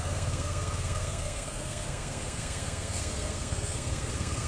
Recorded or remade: remade